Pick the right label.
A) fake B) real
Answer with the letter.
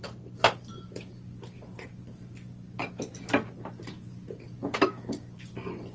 B